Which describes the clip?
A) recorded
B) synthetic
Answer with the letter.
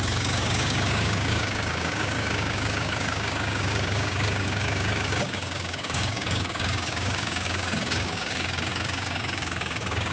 B